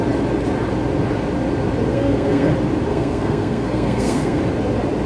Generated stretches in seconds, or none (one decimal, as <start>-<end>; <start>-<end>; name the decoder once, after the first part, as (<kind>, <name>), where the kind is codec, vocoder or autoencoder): 1.9-2.5 (codec, SNAC); 2.9-4.4